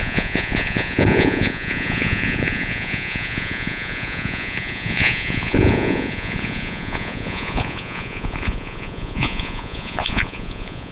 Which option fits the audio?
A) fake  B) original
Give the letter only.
A